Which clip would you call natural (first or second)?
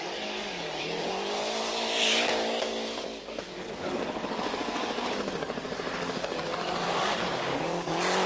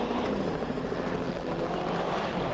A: second